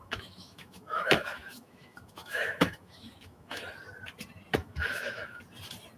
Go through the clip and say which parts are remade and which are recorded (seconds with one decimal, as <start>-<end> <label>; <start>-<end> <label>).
0.0-3.6 remade; 3.6-4.6 recorded; 4.6-5.4 remade; 5.4-6.0 recorded